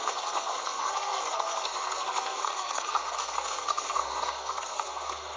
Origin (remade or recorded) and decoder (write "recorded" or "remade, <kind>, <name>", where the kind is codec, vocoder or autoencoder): remade, codec, SNAC